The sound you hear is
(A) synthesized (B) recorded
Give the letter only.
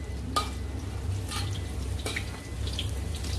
A